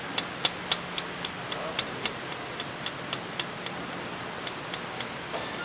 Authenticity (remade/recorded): recorded